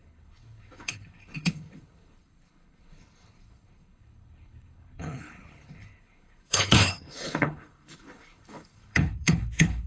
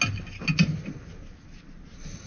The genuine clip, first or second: second